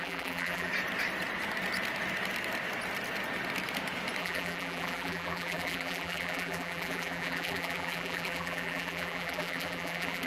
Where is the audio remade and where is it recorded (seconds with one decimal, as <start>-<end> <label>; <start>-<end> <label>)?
0.0-0.7 remade; 0.7-4.2 recorded; 4.2-10.3 remade